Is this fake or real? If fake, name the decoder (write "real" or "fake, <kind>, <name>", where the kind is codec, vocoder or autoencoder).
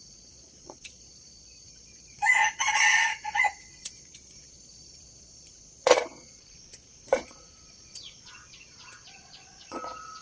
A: fake, vocoder, Vocos